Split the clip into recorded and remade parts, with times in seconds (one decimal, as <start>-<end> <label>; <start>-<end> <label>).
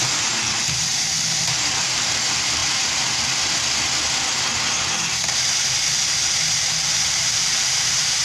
0.0-0.9 remade; 0.9-1.6 recorded; 1.6-2.6 remade; 2.6-7.5 recorded; 7.5-8.2 remade